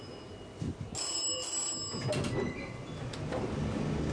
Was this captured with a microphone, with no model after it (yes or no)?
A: yes